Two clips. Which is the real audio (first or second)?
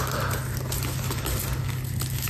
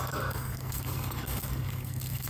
first